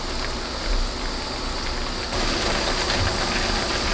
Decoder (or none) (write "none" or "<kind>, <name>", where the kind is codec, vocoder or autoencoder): none